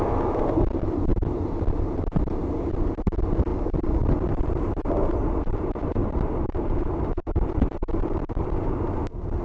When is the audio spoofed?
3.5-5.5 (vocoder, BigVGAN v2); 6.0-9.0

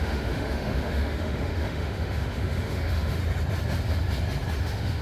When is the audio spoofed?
0.0-3.2 (autoencoder, DAC-VAE); 4.6-5.0

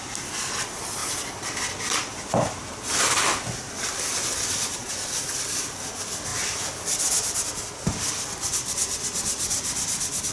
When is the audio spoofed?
none

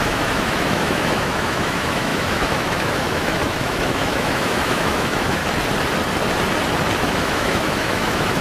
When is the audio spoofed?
0.0-5.4 (autoencoder, DAC-VAE); 7.0-8.4

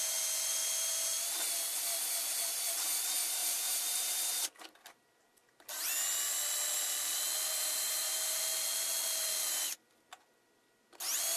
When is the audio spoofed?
3.4-4.3 (vocoder, BigVGAN v2); 7.6-8.4

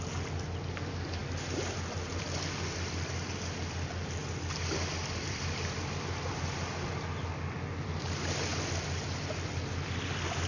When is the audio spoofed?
4.2-6.3 (vocoder, BigVGAN v2); 8.5-9.5